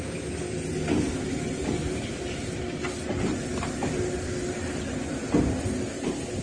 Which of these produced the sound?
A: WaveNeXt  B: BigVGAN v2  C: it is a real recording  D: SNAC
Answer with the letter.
C